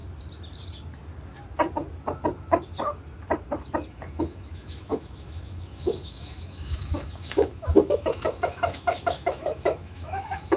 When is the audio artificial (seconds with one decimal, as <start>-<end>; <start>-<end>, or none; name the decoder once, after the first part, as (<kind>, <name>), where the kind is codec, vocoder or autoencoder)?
3.9-10.6 (autoencoder, DAC-VAE)